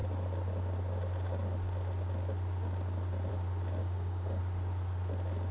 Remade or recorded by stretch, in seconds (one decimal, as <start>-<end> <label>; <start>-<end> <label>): 0.0-3.8 recorded; 3.8-4.4 remade; 4.4-5.5 recorded

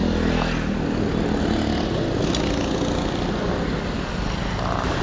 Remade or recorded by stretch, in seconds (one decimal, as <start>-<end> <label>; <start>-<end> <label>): 0.0-5.0 recorded

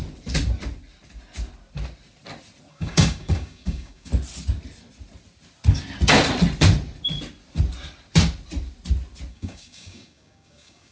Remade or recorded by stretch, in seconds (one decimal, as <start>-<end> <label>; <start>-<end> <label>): 0.0-2.7 recorded; 2.7-4.1 remade; 4.1-9.3 recorded; 9.3-10.9 remade

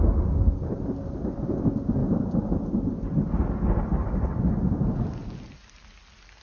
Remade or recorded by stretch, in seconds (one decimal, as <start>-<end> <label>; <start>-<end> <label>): 0.0-6.4 recorded

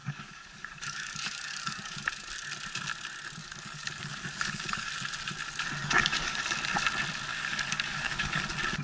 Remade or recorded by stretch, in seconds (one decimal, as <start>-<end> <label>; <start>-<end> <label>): 0.0-2.0 remade; 2.0-3.4 recorded; 3.4-4.9 remade; 4.9-5.8 recorded; 5.8-6.4 remade; 6.4-7.3 recorded; 7.3-8.4 remade; 8.4-8.8 recorded